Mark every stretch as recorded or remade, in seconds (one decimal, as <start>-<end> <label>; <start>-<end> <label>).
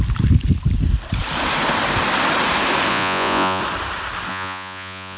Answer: 0.0-2.9 recorded; 2.9-3.6 remade; 3.6-4.3 recorded; 4.3-5.2 remade